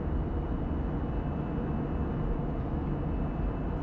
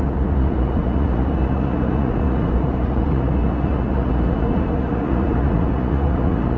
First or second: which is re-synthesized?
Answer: second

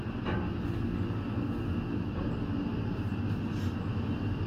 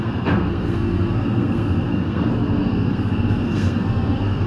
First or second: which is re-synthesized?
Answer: second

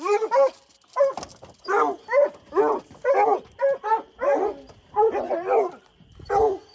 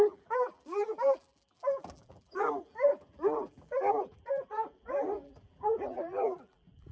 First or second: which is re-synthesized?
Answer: second